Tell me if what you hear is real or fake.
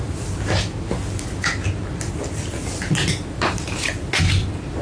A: real